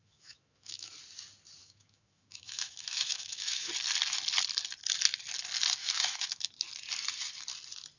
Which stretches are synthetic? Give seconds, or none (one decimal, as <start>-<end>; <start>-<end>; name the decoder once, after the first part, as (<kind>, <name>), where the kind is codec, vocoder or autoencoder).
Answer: 0.0-0.9 (autoencoder, DAC-VAE); 1.6-3.7; 5.8-6.5